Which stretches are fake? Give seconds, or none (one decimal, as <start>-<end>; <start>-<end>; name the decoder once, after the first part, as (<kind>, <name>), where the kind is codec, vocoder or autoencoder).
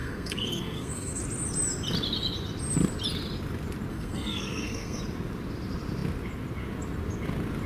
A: 0.0-1.2 (codec, SNAC); 3.9-5.0